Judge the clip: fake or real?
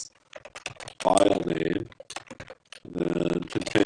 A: real